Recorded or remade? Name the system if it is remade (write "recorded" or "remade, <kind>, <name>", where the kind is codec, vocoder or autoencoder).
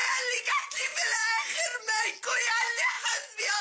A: recorded